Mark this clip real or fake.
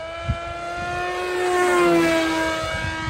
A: real